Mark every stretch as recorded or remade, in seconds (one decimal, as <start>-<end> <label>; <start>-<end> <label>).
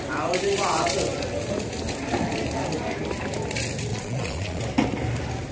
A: 0.0-3.9 recorded; 3.9-4.6 remade; 4.6-5.5 recorded